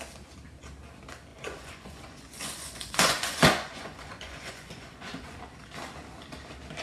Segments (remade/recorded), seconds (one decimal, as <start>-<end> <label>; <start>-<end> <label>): 0.0-1.3 recorded; 1.3-5.4 remade; 5.4-6.8 recorded

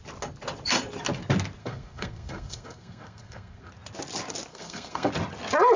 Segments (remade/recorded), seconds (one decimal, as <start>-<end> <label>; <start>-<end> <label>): 0.0-1.6 recorded; 1.6-3.7 remade; 3.7-4.5 recorded; 4.5-5.1 remade; 5.1-5.8 recorded

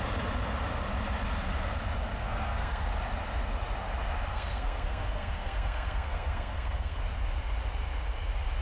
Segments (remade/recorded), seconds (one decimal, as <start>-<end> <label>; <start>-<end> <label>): 0.0-2.2 recorded; 2.2-2.9 remade; 2.9-4.3 recorded; 4.3-7.0 remade; 7.0-8.6 recorded

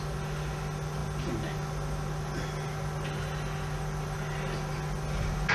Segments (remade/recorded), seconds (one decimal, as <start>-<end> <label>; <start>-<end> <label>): 0.0-5.5 recorded

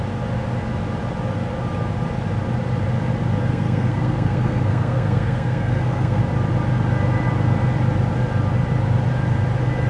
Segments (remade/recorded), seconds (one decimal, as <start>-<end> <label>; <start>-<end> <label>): 0.0-3.5 recorded; 3.5-6.2 remade; 6.2-9.9 recorded

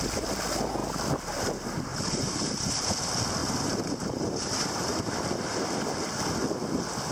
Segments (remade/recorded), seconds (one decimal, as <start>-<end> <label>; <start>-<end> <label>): 0.0-1.9 recorded; 1.9-2.7 remade; 2.7-3.4 recorded; 3.4-5.1 remade; 5.1-7.1 recorded

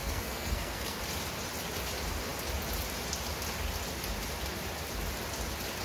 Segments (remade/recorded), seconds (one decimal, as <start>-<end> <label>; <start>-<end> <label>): 0.0-1.0 remade; 1.0-5.8 recorded

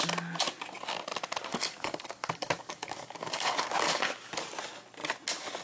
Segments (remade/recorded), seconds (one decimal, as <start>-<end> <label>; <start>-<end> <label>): 0.0-1.5 recorded; 1.5-4.4 remade; 4.4-5.6 recorded